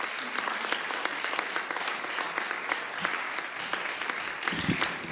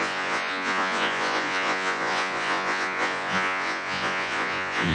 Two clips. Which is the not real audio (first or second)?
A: second